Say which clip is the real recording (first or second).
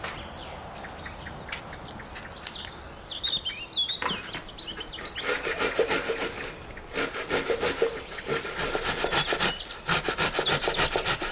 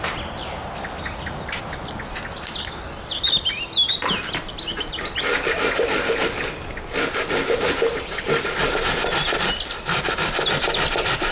first